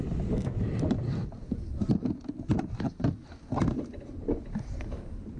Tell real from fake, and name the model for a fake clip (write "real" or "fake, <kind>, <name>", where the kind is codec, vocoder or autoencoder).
real